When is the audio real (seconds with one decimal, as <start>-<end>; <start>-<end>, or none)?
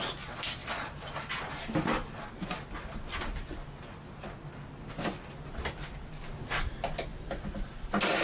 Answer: 0.0-0.6; 1.4-8.2